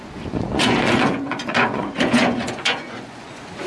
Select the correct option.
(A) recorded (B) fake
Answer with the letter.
B